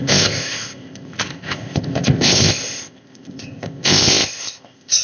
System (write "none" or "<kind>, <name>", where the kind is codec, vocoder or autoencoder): codec, ZipCodec